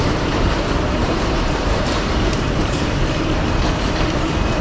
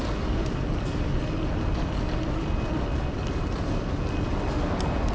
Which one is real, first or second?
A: second